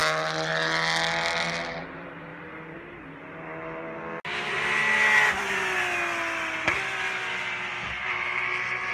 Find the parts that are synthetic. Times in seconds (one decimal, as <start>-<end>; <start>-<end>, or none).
none